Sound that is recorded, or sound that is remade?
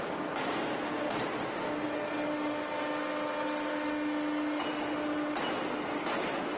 recorded